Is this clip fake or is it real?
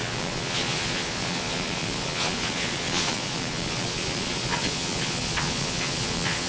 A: fake